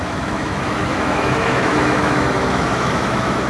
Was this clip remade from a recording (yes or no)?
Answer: yes